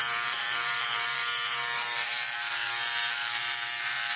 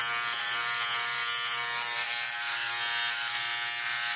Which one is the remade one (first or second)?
first